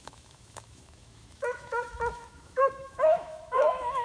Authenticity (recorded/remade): remade